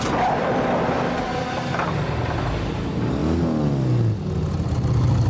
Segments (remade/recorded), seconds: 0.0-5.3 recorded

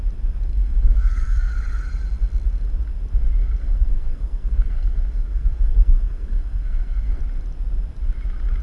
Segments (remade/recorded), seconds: 0.0-0.5 recorded; 0.5-1.5 remade; 1.5-3.4 recorded; 3.4-7.2 remade; 7.2-8.6 recorded

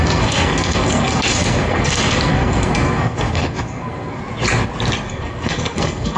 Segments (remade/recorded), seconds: 0.0-4.2 remade; 4.2-5.1 recorded; 5.1-6.2 remade

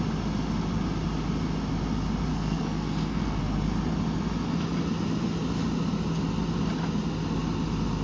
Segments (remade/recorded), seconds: 0.0-2.3 recorded; 2.3-3.4 remade; 3.4-8.0 recorded

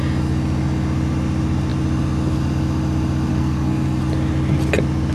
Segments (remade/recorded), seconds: 0.0-3.3 recorded; 3.3-4.0 remade; 4.0-5.1 recorded

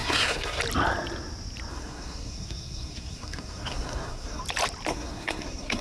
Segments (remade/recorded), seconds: 0.0-0.6 remade; 0.6-1.7 recorded; 1.7-4.4 remade; 4.4-4.9 recorded; 4.9-5.8 remade

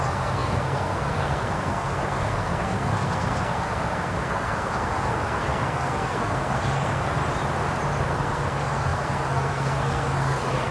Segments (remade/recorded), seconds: 0.0-7.2 remade; 7.2-8.0 recorded; 8.0-10.7 remade

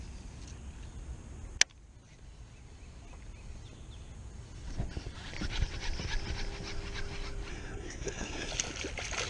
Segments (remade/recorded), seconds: 0.0-7.5 recorded; 7.5-8.5 remade; 8.5-9.3 recorded